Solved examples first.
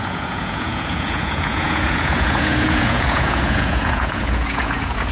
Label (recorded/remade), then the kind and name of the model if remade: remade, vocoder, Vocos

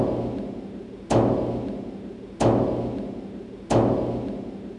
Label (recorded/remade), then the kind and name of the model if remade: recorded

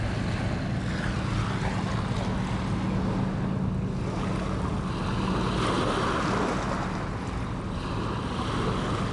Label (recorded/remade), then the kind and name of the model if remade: recorded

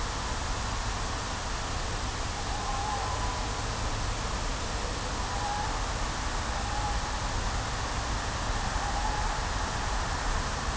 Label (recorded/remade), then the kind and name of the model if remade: recorded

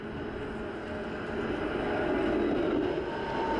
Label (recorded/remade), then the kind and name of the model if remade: recorded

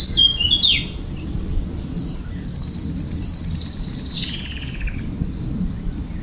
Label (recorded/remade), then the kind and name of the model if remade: recorded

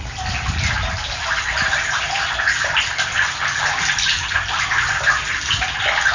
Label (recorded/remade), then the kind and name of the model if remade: recorded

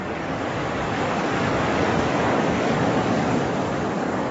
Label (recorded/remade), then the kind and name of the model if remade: remade, codec, DAC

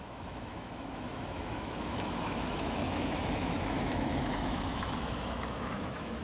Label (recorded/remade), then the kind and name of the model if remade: remade, autoencoder, DAC-VAE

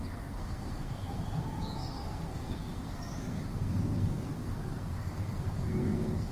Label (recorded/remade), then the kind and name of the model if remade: remade, codec, SNAC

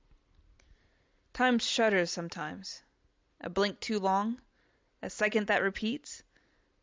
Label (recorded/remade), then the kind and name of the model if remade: recorded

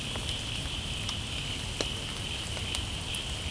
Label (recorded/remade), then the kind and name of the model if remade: recorded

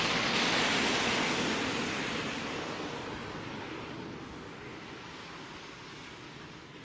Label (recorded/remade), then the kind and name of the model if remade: recorded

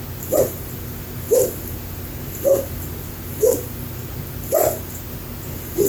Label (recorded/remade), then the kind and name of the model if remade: recorded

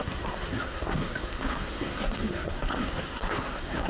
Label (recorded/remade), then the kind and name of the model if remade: remade, codec, SNAC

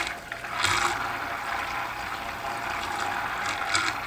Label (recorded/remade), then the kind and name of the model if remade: recorded